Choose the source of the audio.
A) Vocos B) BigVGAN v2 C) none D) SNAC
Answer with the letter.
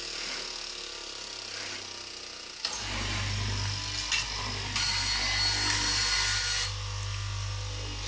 C